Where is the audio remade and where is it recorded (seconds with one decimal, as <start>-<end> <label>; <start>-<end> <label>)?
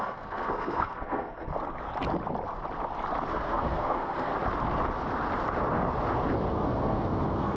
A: 0.0-1.5 remade; 1.5-3.3 recorded; 3.3-4.3 remade; 4.3-6.5 recorded; 6.5-7.6 remade